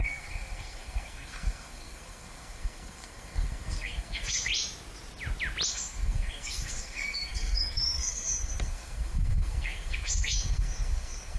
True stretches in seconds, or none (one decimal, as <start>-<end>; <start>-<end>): 4.5-5.7